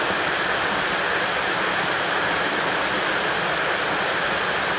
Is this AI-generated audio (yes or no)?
no